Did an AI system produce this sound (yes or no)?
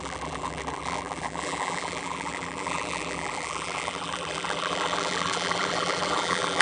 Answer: yes